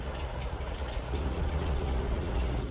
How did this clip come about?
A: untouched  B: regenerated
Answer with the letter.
B